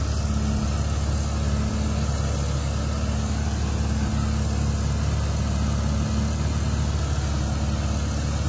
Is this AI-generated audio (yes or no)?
no